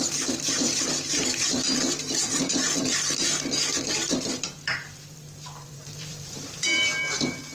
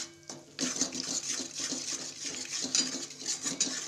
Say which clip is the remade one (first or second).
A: first